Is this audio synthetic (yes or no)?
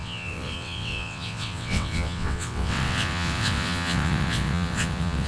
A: yes